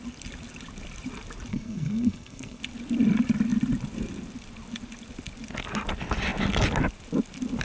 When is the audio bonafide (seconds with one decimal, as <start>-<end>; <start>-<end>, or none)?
0.0-1.5; 2.6-7.6